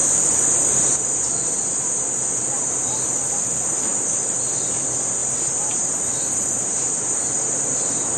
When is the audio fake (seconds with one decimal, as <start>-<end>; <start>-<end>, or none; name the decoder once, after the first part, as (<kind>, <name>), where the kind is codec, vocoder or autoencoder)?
0.7-2.4 (vocoder, BigVGAN v2); 3.9-8.2